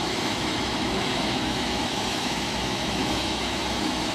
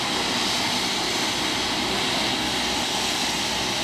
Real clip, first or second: second